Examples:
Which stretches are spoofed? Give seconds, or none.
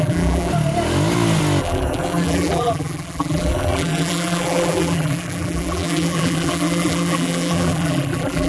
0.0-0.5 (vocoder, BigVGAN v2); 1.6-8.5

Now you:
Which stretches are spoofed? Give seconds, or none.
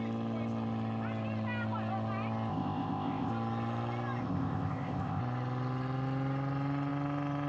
2.5-3.3 (codec, ZipCodec); 4.2-5.2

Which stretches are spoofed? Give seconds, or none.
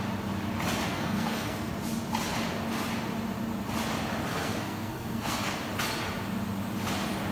0.9-1.7 (codec, SNAC); 4.3-5.6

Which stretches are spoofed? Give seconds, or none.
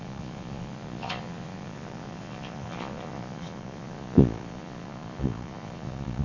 0.0-6.2 (vocoder, Vocos)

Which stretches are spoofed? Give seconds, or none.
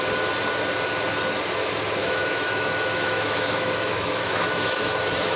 2.0-5.0 (autoencoder, DAC-VAE)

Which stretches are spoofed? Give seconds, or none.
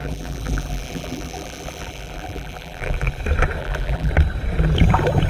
0.0-3.2 (vocoder, BigVGAN v2); 3.6-4.1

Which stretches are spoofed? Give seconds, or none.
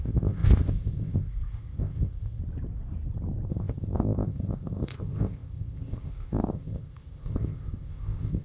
0.0-2.4 (codec, ZipCodec); 3.5-8.4